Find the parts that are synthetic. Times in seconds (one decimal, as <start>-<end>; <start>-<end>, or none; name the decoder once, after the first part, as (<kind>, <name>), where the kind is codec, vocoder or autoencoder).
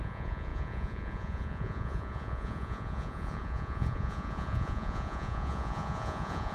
0.0-6.5 (vocoder, Vocos)